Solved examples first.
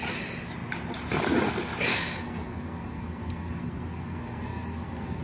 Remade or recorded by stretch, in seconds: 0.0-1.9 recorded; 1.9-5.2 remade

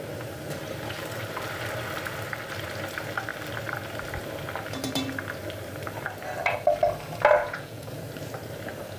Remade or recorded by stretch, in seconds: 0.0-7.4 recorded; 7.4-7.9 remade; 7.9-9.0 recorded

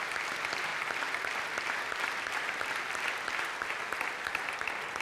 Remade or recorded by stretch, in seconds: 0.0-5.0 recorded

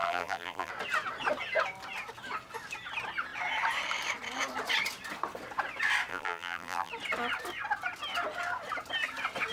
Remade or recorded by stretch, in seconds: 0.0-0.7 remade; 0.7-6.1 recorded; 6.1-6.9 remade; 6.9-9.5 recorded

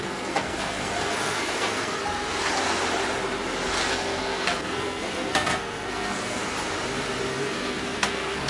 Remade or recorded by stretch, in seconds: 0.0-2.0 remade; 2.0-3.9 recorded; 3.9-6.4 remade; 6.4-7.3 recorded; 7.3-8.5 remade

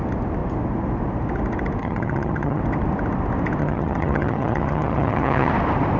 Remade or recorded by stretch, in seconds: 0.0-1.8 recorded; 1.8-2.6 remade; 2.6-3.6 recorded; 3.6-5.5 remade; 5.5-6.0 recorded